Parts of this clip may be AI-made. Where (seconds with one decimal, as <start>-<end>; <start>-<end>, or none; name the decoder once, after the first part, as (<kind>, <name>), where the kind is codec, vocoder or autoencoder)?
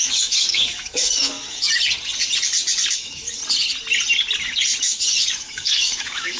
0.0-1.7 (autoencoder, DAC-VAE); 2.9-3.4; 4.8-6.4